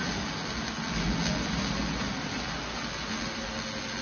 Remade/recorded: recorded